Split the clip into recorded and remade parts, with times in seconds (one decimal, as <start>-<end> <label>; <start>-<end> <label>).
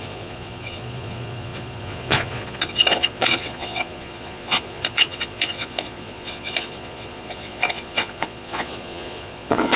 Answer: 0.0-9.8 remade